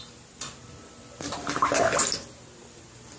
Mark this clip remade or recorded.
recorded